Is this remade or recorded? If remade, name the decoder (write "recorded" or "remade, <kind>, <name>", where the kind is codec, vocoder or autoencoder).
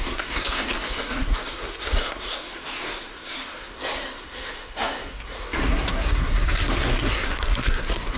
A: remade, codec, SNAC